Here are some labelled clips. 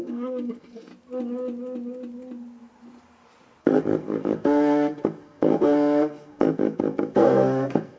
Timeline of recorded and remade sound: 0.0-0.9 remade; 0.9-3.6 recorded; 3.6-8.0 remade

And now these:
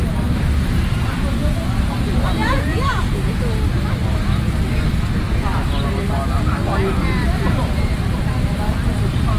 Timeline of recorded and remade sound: 0.0-2.4 recorded; 2.4-3.3 remade; 3.3-9.4 recorded

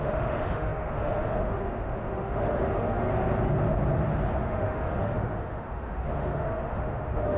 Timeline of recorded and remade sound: 0.0-3.1 remade; 3.1-4.4 recorded; 4.4-7.4 remade

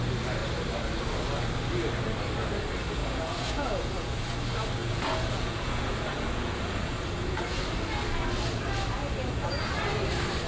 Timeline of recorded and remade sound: 0.0-3.0 recorded; 3.0-4.3 remade; 4.3-4.8 recorded; 4.8-7.6 remade; 7.6-9.0 recorded; 9.0-9.7 remade; 9.7-10.5 recorded

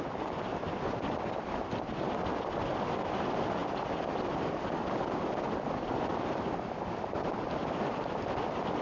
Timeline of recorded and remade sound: 0.0-8.8 recorded

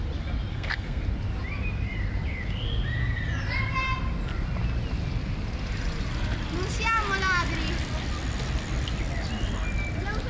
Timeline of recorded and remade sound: 0.0-0.5 recorded; 0.5-1.0 remade; 1.0-10.3 recorded

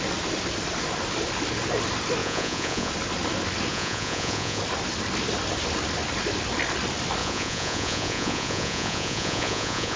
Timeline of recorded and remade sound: 0.0-2.2 recorded; 2.2-2.9 remade; 2.9-3.7 recorded; 3.7-4.6 remade; 4.6-7.2 recorded; 7.2-10.0 remade

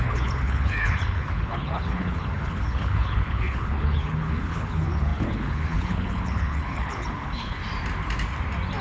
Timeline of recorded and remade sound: 0.0-7.6 remade; 7.6-8.8 recorded